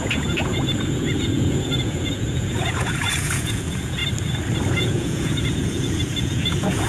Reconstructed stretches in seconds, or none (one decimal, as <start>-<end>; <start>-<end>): 0.0-4.0; 4.7-6.9